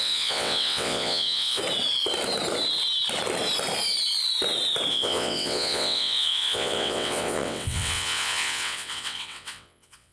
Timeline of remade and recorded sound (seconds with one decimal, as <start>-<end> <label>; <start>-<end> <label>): 0.0-1.6 remade; 1.6-4.9 recorded; 4.9-10.1 remade